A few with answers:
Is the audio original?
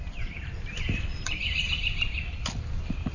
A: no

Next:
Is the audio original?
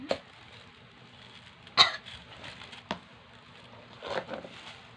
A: yes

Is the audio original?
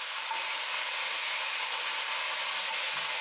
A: yes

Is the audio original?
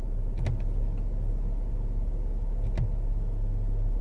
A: yes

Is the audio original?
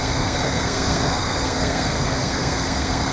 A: no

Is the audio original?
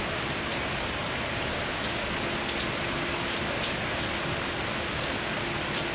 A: yes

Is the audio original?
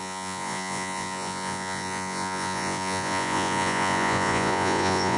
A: no